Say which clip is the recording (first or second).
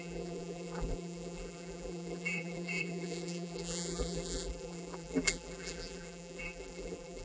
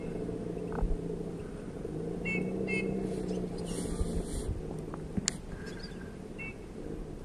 second